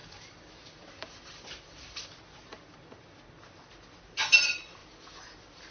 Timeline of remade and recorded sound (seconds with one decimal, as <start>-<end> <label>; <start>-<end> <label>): 0.0-3.0 remade; 3.0-4.8 recorded; 4.8-5.7 remade